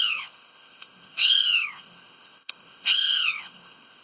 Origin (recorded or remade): remade